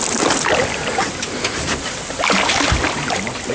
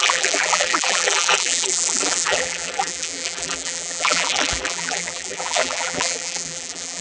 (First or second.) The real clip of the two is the first